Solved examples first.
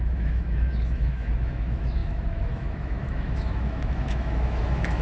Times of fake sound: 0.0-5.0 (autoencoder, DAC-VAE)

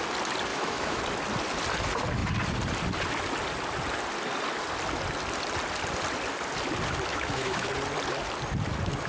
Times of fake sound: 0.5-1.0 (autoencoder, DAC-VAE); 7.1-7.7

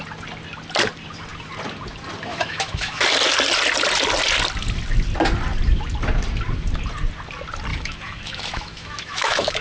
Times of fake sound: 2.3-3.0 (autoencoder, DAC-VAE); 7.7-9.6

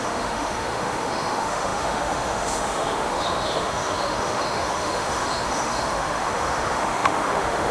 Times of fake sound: 0.0-7.7 (autoencoder, DAC-VAE)